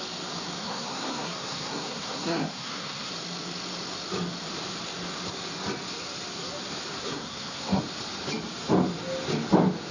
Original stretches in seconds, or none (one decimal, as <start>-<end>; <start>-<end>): 0.0-0.6; 3.1-7.0; 7.8-9.9